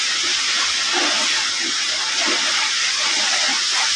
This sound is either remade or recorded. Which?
recorded